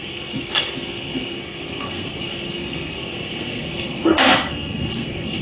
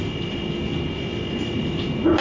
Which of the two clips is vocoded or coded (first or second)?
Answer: first